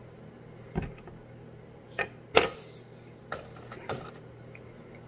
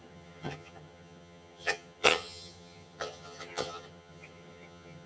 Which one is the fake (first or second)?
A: second